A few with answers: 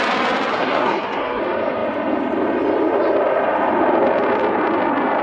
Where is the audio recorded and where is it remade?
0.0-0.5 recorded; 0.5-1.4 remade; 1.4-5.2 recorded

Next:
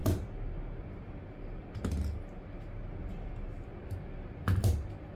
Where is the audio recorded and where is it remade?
0.0-5.2 recorded

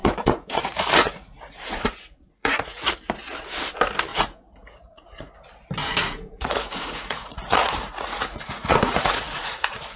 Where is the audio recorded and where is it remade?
0.0-2.9 remade; 2.9-4.1 recorded; 4.1-5.3 remade; 5.3-5.8 recorded; 5.8-10.0 remade

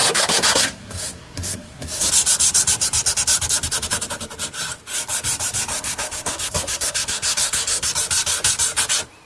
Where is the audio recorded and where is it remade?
0.0-2.1 remade; 2.1-5.7 recorded; 5.7-7.9 remade; 7.9-9.3 recorded

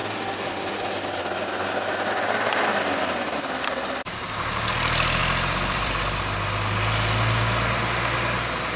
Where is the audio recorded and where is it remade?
0.0-5.2 recorded; 5.2-6.2 remade; 6.2-8.8 recorded

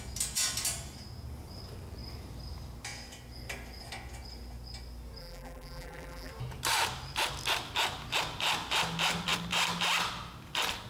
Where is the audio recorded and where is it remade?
0.0-5.2 recorded; 5.2-6.3 remade; 6.3-10.9 recorded

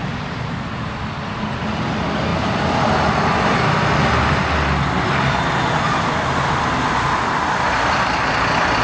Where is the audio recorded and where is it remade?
0.0-8.8 recorded

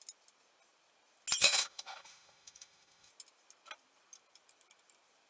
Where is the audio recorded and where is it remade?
0.0-1.4 recorded; 1.4-3.1 remade; 3.1-5.3 recorded